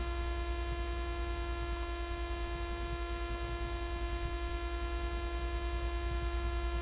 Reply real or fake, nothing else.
real